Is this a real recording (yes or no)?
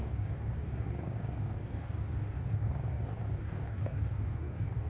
no